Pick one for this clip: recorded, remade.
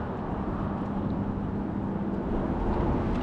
recorded